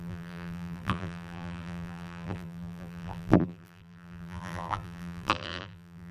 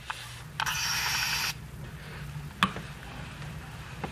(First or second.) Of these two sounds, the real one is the second